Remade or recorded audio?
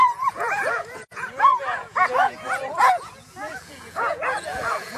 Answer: remade